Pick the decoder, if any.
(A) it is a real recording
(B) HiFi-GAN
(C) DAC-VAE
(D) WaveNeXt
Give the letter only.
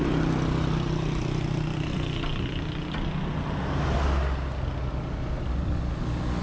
A